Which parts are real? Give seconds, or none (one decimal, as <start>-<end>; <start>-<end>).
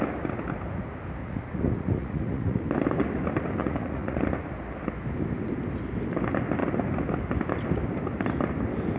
0.0-1.2; 2.6-3.6; 4.2-9.0